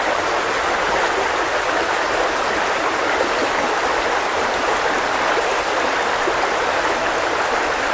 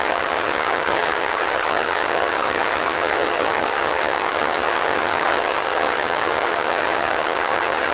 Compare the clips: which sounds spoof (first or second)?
second